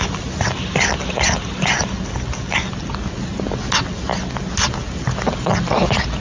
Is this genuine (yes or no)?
yes